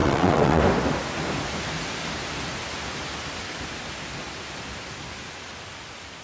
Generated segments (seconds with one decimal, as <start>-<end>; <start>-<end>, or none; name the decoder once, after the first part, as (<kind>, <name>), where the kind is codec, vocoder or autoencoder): 0.0-0.6 (vocoder, WaveNeXt)